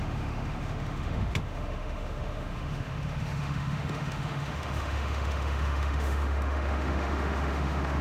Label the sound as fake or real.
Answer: fake